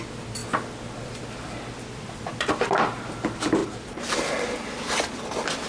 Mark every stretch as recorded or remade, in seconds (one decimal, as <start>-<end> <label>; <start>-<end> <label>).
0.0-5.7 recorded